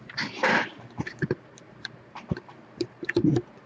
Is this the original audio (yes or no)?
no